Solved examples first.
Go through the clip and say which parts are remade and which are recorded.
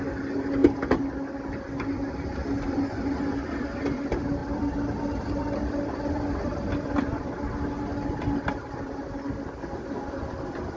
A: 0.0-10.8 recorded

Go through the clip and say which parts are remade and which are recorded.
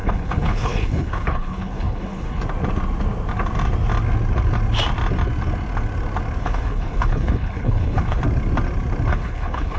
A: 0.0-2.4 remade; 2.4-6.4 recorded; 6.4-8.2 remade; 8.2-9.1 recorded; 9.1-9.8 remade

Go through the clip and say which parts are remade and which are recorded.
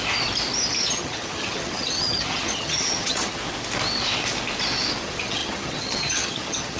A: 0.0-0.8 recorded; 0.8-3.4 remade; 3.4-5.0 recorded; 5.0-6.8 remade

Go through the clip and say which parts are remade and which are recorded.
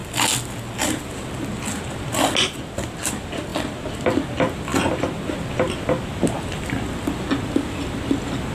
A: 0.0-8.5 recorded